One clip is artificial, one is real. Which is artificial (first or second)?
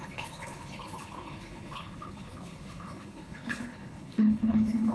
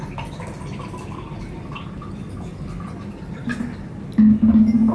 first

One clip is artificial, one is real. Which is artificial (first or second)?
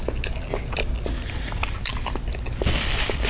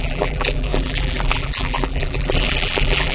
second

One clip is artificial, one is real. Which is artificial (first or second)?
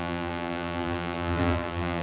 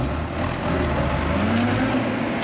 first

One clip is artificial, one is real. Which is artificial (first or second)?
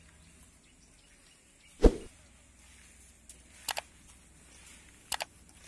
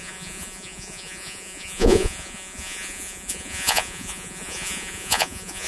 second